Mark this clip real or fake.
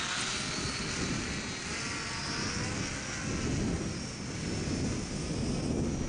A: real